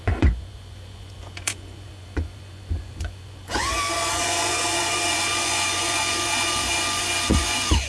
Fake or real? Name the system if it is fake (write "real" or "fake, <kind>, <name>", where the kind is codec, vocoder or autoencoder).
fake, vocoder, Vocos